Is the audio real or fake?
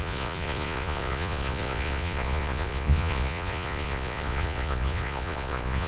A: fake